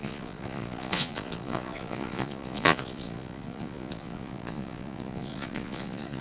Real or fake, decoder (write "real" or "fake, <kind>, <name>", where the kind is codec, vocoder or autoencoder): fake, vocoder, Vocos